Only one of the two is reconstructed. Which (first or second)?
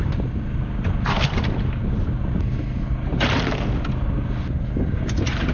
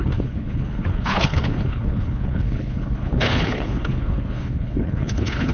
second